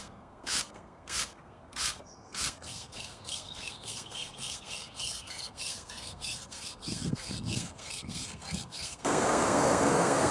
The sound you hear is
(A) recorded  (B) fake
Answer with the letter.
B